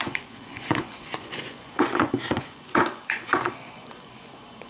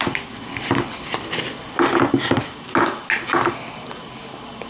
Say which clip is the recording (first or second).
second